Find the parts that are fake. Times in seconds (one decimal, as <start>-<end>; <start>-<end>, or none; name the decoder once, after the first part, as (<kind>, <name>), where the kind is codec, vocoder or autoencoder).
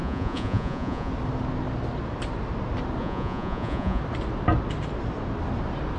0.0-1.1 (vocoder, Vocos); 3.0-4.0